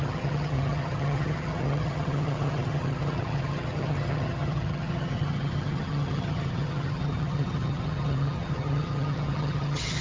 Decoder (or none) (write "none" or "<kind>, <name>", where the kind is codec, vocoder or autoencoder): vocoder, HiFi-GAN